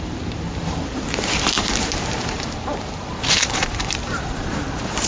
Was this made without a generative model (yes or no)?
no